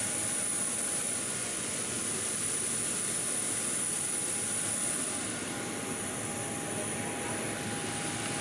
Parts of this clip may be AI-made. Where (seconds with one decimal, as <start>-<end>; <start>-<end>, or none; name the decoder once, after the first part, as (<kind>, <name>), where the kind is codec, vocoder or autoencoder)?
1.0-2.0 (vocoder, Vocos)